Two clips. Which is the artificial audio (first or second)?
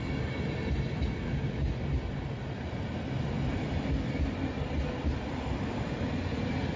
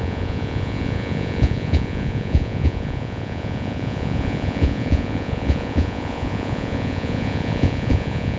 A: second